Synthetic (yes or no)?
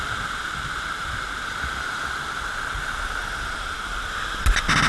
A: no